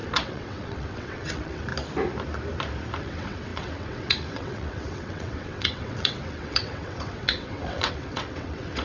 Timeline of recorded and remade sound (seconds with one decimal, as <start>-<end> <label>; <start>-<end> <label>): 0.0-1.7 remade; 1.7-3.0 recorded; 3.0-8.8 remade